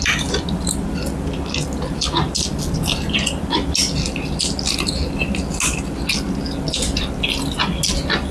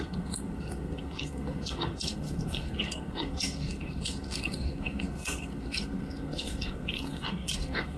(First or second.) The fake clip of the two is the second